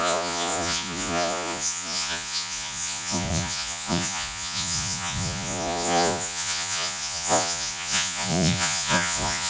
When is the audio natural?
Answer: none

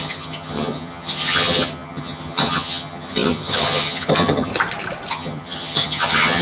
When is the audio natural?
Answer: 4.5-5.1

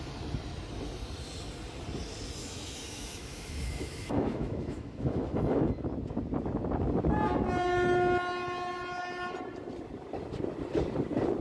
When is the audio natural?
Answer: 0.0-2.4; 5.7-11.4